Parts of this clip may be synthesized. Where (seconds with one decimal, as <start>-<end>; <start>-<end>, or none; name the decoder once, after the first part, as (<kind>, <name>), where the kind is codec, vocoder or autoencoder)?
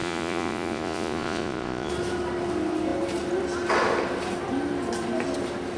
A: 0.0-1.9 (vocoder, Vocos)